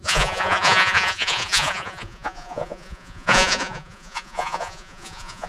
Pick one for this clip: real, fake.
fake